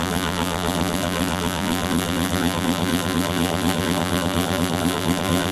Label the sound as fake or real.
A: fake